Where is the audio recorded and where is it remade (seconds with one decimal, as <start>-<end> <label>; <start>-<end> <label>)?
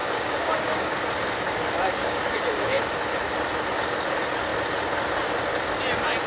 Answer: 0.0-1.0 remade; 1.0-2.0 recorded; 2.0-2.8 remade; 2.8-6.3 recorded